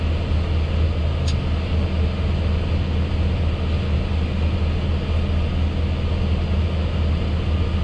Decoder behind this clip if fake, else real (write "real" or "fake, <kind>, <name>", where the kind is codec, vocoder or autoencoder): real